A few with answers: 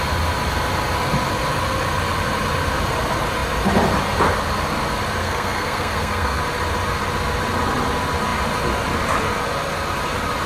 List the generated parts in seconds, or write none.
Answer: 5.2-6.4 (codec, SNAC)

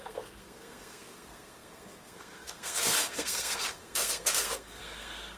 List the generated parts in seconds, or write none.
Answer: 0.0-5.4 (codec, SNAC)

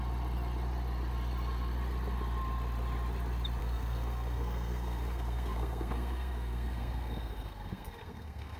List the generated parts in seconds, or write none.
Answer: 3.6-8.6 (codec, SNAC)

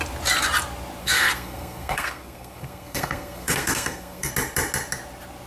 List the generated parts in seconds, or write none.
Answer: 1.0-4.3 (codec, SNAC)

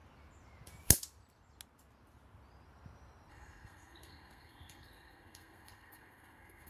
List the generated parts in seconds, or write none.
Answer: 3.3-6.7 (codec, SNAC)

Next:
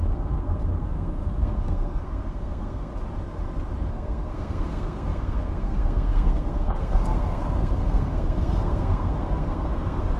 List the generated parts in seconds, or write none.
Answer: 0.0-2.9 (codec, SNAC); 3.9-10.2